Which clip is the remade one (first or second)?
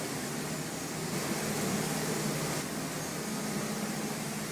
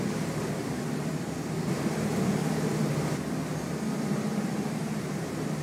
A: second